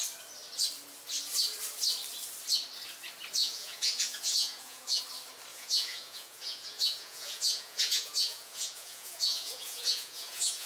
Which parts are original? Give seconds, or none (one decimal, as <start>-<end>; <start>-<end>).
0.0-3.4; 5.0-5.5